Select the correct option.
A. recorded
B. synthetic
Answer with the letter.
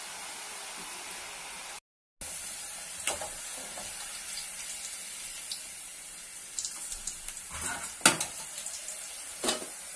A